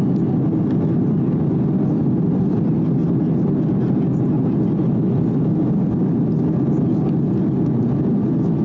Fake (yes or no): no